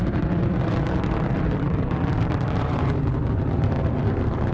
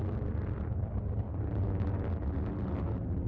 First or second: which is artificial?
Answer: first